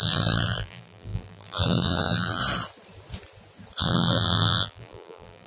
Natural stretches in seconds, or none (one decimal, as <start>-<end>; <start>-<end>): 2.4-3.8